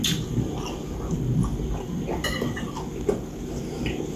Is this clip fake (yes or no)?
no